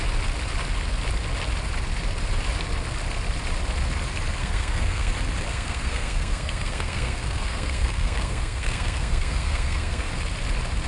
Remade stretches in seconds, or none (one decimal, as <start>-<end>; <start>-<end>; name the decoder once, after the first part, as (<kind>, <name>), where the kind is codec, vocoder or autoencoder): 4.4-5.1 (codec, SNAC); 5.5-10.1